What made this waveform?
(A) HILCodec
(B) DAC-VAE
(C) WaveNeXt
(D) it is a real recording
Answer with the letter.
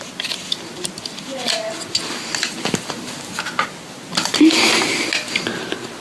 D